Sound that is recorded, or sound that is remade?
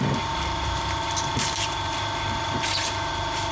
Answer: remade